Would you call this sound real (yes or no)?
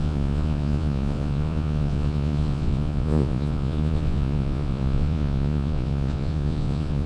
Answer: no